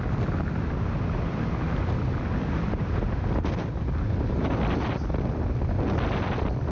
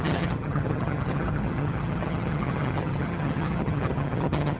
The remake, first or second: second